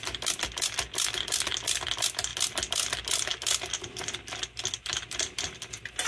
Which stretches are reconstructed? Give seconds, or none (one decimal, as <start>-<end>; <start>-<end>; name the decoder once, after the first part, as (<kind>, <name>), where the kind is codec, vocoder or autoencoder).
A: none